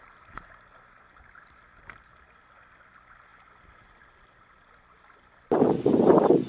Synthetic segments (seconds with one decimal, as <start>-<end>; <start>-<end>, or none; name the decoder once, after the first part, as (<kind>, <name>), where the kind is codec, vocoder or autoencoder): none